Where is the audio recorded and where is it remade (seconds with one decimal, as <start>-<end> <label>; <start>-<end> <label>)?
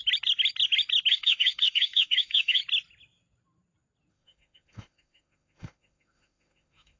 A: 0.0-1.1 recorded; 1.1-2.6 remade; 2.6-4.1 recorded; 4.1-7.0 remade